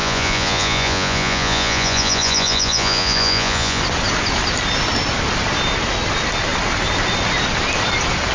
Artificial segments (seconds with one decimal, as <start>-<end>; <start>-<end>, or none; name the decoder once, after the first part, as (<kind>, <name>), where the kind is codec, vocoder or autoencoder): 0.0-3.8 (vocoder, Vocos)